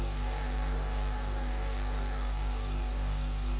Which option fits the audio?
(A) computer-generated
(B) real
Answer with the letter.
A